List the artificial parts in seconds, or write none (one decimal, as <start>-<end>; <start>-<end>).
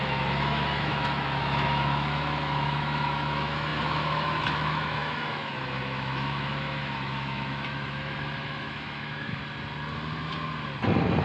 0.0-9.4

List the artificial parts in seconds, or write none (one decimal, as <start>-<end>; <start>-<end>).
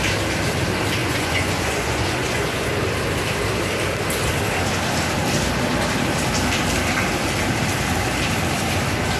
1.0-2.7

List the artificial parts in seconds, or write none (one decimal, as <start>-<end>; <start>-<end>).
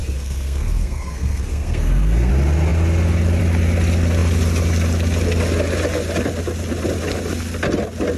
0.0-2.3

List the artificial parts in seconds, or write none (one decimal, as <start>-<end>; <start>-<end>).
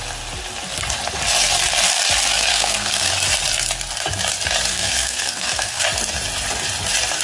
2.5-3.1; 4.7-5.8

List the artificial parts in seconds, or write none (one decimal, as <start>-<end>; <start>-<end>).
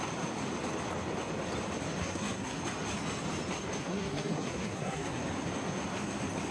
2.0-2.6; 3.8-5.2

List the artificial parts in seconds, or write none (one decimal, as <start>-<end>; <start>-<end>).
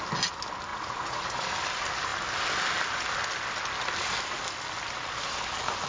0.7-1.2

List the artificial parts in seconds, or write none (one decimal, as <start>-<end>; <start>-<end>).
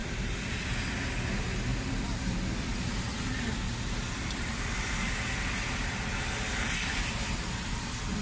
1.7-2.3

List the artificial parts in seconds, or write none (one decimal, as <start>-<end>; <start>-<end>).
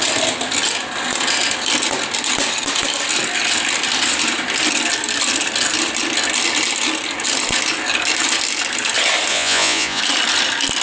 9.3-10.0